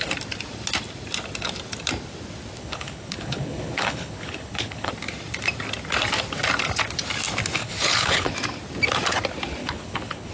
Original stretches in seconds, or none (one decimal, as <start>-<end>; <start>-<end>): 0.0-2.6; 4.9-7.6; 8.3-9.6